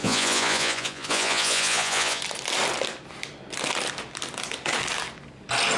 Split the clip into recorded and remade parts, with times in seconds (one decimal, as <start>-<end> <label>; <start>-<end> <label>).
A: 0.0-2.2 remade; 2.2-5.8 recorded